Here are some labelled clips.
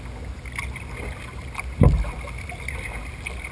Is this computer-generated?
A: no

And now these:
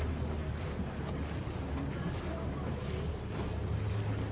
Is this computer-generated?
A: no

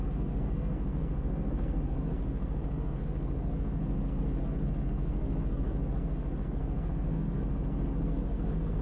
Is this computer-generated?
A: yes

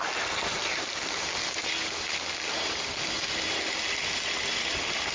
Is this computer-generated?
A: no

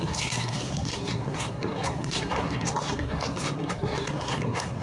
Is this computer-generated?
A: yes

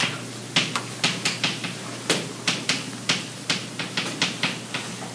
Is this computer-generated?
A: no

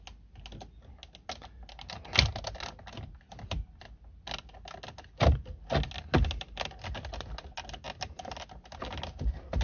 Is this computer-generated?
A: no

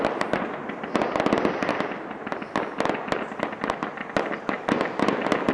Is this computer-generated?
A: no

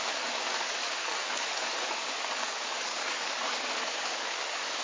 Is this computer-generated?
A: yes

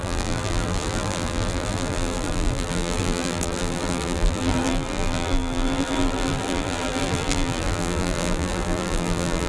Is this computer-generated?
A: yes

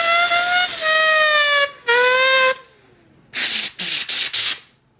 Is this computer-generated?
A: no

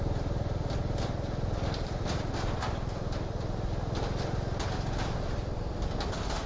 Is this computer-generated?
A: no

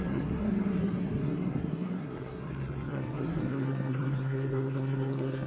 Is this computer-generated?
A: yes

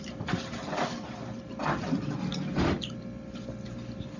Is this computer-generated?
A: no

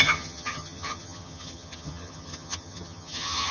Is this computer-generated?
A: yes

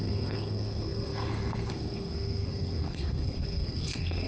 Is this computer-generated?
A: yes